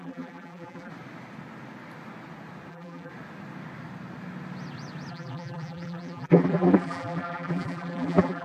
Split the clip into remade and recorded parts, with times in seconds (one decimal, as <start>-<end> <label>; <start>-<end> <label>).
0.0-0.9 remade; 0.9-2.7 recorded; 2.7-3.1 remade; 3.1-5.1 recorded; 5.1-8.4 remade